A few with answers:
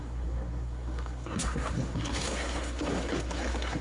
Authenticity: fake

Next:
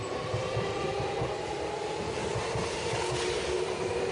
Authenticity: real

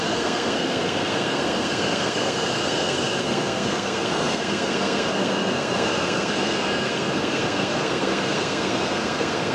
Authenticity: fake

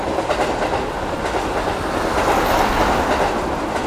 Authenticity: real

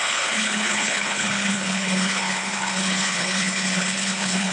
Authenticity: fake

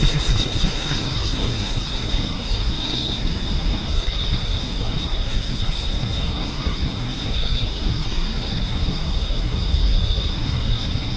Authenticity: fake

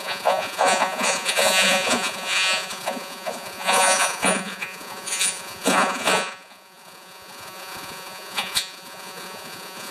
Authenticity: fake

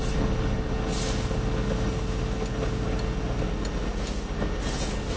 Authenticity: real